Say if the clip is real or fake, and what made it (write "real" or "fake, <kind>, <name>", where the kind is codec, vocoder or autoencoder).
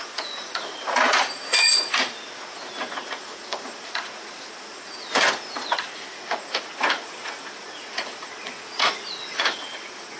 fake, vocoder, Vocos